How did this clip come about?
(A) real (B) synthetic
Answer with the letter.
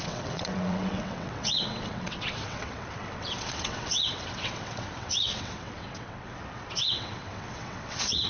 B